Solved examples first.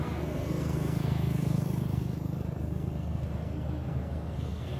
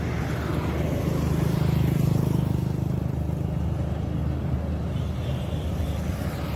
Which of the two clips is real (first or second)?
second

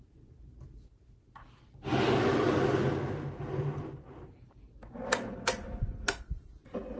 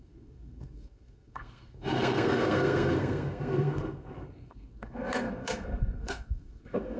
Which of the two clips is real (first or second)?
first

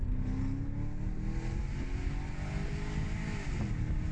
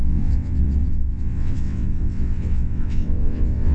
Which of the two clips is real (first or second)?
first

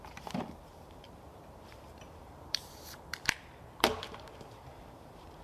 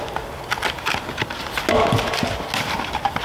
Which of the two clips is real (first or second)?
second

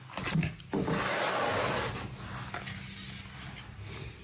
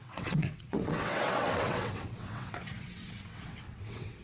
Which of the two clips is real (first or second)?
first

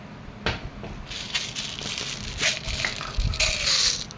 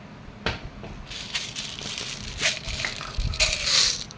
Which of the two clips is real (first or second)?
first